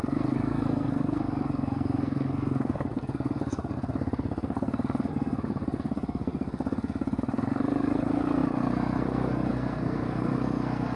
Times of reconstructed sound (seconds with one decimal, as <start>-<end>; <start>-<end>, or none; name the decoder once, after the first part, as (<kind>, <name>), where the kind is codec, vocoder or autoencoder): 0.0-11.0 (codec, SNAC)